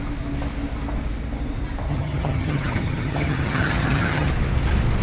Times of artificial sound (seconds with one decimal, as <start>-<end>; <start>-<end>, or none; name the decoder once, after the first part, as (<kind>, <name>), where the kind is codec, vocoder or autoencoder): 1.9-4.3 (vocoder, HiFi-GAN)